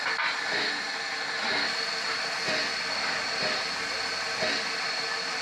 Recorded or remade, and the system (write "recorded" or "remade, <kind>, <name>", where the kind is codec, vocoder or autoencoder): recorded